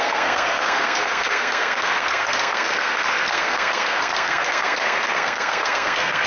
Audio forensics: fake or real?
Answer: fake